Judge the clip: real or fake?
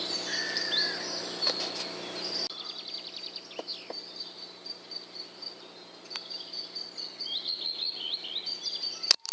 real